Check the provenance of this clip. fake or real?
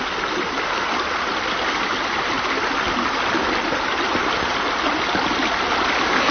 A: real